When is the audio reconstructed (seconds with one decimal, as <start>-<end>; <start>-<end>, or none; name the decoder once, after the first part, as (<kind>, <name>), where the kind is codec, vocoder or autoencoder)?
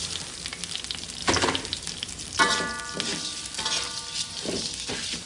none